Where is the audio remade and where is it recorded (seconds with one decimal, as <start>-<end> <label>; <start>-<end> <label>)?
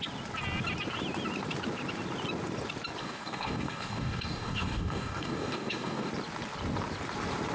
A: 0.0-3.0 recorded; 3.0-6.1 remade; 6.1-7.5 recorded